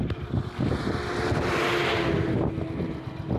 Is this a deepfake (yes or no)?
no